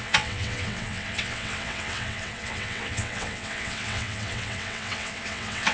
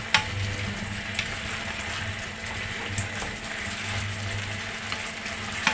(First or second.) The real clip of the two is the second